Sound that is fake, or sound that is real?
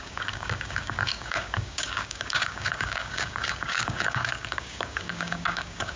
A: fake